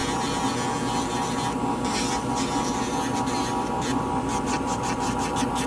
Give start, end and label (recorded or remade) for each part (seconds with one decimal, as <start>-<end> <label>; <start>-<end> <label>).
0.0-5.7 recorded